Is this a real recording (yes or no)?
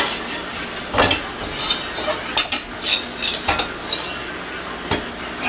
yes